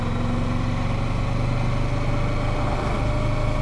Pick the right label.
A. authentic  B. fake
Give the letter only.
A